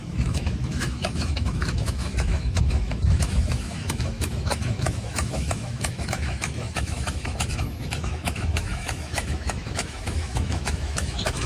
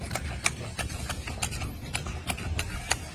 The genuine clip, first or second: second